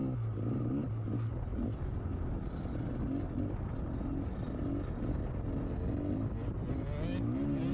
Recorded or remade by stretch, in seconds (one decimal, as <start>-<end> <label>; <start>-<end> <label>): 0.0-7.7 recorded